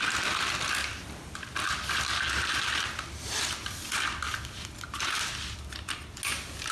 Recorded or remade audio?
recorded